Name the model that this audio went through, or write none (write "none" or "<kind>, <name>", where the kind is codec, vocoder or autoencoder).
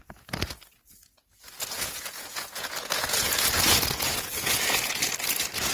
vocoder, Vocos